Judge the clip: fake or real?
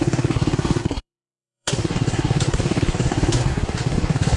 fake